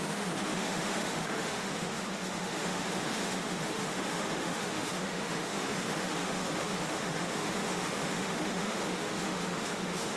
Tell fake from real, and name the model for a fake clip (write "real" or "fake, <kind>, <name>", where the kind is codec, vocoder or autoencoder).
fake, autoencoder, DAC-VAE